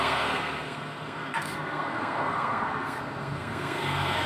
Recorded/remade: remade